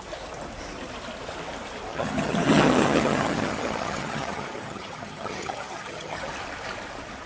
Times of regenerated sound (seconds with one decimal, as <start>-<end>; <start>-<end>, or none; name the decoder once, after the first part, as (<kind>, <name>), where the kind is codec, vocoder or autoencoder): 1.9-6.3 (vocoder, HiFi-GAN)

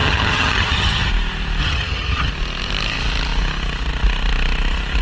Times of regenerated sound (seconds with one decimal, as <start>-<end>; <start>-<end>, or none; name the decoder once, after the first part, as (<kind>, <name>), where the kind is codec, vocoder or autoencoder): 0.0-1.1 (vocoder, HiFi-GAN); 1.6-2.3

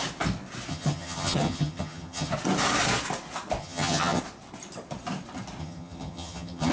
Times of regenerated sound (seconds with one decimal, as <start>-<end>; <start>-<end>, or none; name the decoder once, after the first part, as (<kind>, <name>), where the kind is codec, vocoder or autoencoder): 0.7-2.3 (vocoder, HiFi-GAN); 3.6-4.2; 5.6-6.7